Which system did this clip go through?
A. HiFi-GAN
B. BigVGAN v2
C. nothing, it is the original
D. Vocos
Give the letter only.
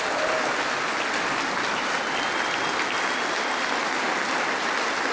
C